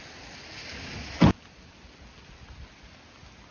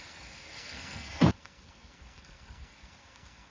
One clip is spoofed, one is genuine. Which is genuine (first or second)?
first